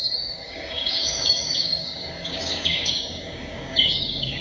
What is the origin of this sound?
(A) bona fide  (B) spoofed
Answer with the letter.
B